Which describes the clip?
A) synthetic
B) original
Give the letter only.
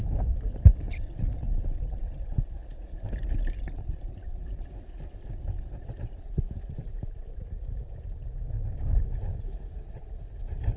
B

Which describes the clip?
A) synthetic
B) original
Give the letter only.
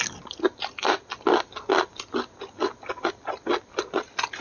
B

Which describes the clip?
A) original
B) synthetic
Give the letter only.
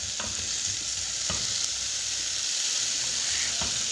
A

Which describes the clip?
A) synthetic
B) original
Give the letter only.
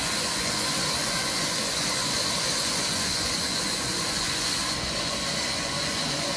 A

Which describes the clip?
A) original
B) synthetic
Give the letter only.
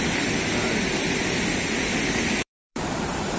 B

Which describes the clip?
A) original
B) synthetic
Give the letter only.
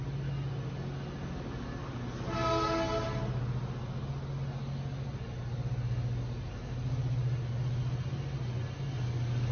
A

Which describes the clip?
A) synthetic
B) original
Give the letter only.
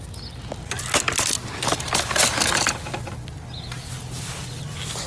B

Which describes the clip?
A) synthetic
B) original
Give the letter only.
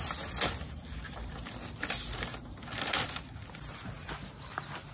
B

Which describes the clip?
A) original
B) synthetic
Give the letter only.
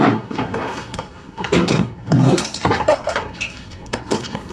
B